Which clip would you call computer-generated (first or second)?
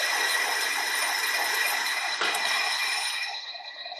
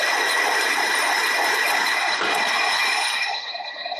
second